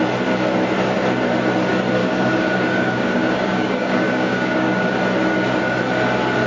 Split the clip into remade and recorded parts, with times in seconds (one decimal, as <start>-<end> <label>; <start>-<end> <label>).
0.0-2.0 recorded; 2.0-4.9 remade; 4.9-6.5 recorded